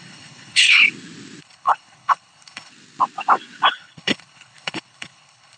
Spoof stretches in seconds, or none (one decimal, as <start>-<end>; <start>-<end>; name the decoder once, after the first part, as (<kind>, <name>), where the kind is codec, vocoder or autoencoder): 0.0-0.8 (codec, HILCodec); 1.4-2.7; 3.7-5.6